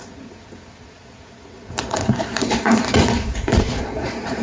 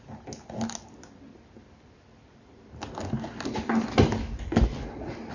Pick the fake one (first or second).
first